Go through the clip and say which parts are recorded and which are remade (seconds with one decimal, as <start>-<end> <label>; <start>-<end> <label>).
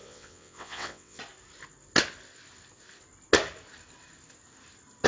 0.0-1.2 remade; 1.2-5.1 recorded